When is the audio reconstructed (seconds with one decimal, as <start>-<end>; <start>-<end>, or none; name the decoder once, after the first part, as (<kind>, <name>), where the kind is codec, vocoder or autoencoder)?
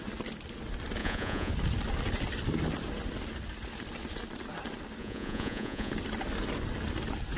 1.0-1.5 (vocoder, Vocos); 5.0-5.9